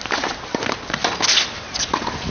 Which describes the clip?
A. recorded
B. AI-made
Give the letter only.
A